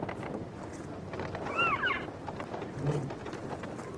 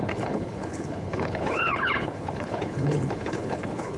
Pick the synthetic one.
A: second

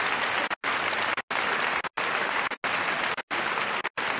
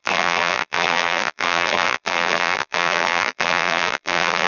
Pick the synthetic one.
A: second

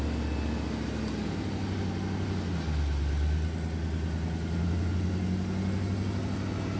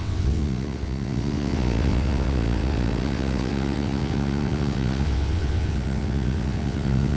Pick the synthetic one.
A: second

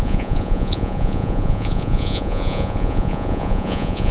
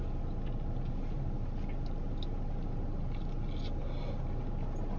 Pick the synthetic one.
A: first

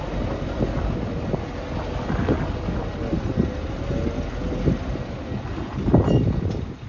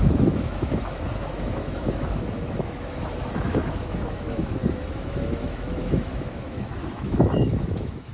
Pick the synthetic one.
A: second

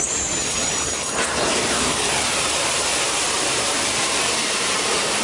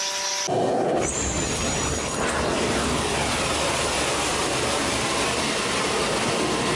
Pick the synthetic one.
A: first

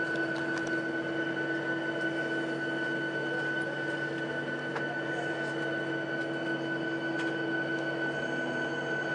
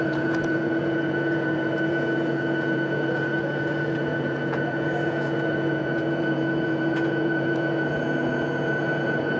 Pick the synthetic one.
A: second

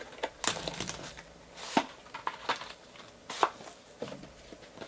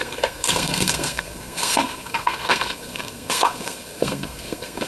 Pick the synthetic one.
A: second